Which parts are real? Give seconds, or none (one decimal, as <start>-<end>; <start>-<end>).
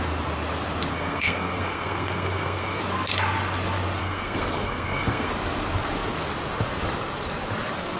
0.0-0.9; 2.8-4.0; 5.3-8.0